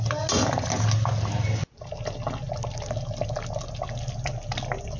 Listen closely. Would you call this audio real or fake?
real